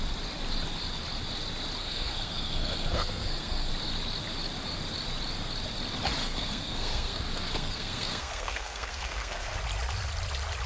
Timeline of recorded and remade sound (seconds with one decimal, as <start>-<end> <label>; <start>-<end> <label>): 0.0-1.8 recorded; 1.8-3.7 remade; 3.7-6.2 recorded; 6.2-9.6 remade; 9.6-10.7 recorded